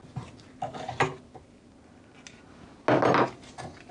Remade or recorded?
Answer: recorded